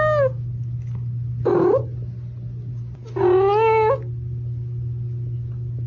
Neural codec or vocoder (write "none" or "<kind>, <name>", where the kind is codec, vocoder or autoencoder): none